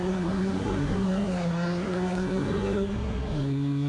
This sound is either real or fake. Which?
fake